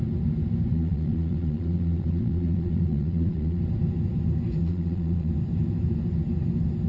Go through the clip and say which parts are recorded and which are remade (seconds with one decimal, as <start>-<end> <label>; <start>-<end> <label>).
0.0-0.7 recorded; 0.7-3.6 remade; 3.6-4.6 recorded; 4.6-5.3 remade; 5.3-6.9 recorded